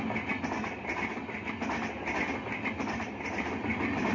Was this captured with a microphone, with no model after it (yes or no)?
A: yes